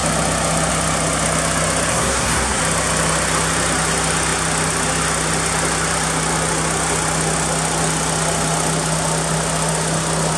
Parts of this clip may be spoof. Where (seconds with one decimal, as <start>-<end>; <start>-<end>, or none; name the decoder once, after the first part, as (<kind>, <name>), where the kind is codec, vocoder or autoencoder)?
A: 1.9-2.6 (codec, SNAC)